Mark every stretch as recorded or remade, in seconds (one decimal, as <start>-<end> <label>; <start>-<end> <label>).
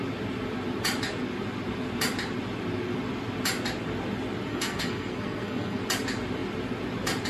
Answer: 0.0-4.5 recorded; 4.5-5.8 remade; 5.8-7.3 recorded